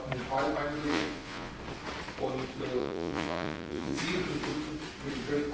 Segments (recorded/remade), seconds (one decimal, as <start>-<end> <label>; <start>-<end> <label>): 0.0-0.9 recorded; 0.9-1.5 remade; 1.5-2.8 recorded; 2.8-4.0 remade; 4.0-5.5 recorded